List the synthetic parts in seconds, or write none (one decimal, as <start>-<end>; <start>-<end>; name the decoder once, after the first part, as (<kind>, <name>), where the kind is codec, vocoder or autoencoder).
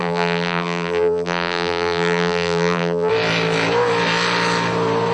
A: 0.0-3.1 (vocoder, BigVGAN v2)